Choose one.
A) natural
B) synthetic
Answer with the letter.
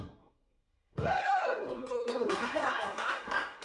B